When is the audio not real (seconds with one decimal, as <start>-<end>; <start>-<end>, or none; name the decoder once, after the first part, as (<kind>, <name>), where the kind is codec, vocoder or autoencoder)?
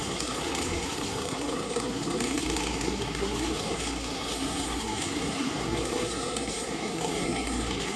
0.0-8.0 (codec, SNAC)